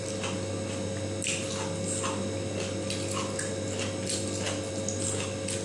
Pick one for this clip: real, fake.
real